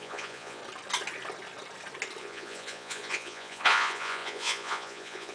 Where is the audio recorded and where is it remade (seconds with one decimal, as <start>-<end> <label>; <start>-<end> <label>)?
0.0-0.6 remade; 0.6-2.2 recorded; 2.2-5.3 remade